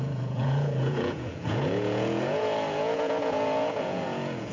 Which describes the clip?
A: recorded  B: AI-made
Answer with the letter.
B